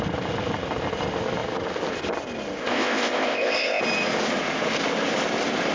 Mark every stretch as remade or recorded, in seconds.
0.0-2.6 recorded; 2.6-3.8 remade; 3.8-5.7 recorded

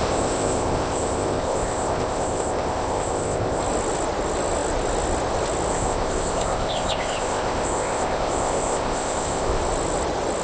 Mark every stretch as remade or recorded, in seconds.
0.0-3.6 remade; 3.6-5.7 recorded; 5.7-9.6 remade; 9.6-10.4 recorded

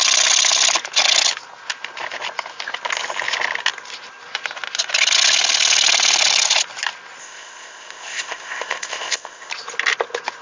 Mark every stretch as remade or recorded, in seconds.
0.0-7.2 recorded; 7.2-9.5 remade; 9.5-10.4 recorded